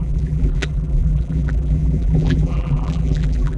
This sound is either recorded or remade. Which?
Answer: remade